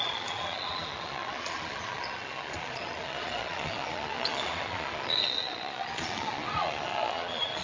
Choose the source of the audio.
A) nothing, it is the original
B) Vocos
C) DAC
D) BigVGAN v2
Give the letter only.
B